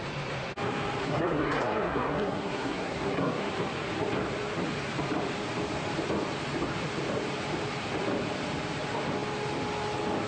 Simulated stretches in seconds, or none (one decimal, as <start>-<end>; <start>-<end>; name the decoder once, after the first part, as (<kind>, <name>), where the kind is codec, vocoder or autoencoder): 1.0-3.5 (codec, SNAC)